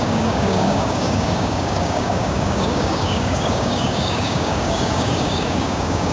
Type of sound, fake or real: fake